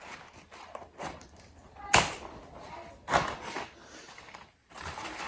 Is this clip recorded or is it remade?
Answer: recorded